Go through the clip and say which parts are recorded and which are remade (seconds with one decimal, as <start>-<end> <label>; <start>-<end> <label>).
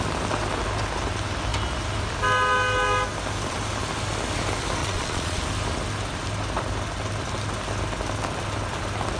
0.0-4.8 recorded; 4.8-5.4 remade; 5.4-9.2 recorded